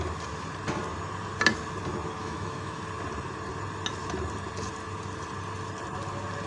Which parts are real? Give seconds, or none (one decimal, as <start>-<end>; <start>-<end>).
0.0-2.2; 2.8-6.5